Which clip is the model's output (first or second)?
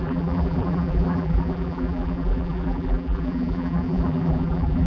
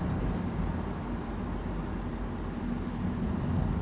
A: first